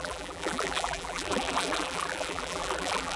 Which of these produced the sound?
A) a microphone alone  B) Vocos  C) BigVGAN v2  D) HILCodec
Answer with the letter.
C